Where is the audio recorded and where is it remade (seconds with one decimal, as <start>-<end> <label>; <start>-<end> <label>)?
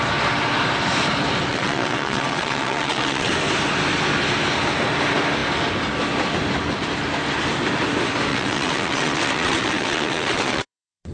0.0-1.5 recorded; 1.5-3.3 remade; 3.3-8.3 recorded; 8.3-11.1 remade